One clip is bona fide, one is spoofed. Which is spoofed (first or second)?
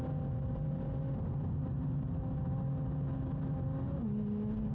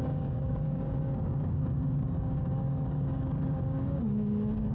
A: second